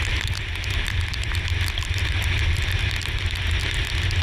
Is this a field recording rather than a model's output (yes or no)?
yes